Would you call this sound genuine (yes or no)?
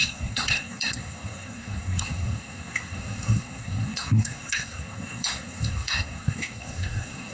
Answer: no